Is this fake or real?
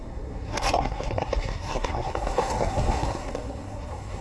fake